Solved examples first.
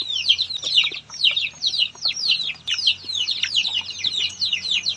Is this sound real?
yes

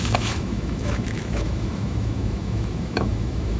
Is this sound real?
no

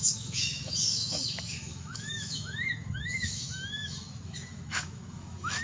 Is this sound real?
no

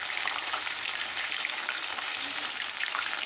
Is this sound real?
no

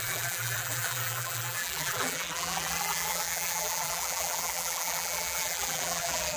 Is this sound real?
no